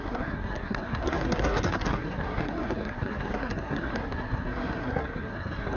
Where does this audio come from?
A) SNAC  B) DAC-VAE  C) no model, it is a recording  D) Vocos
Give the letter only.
A